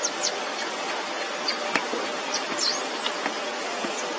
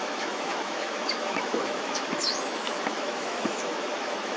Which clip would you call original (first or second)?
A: first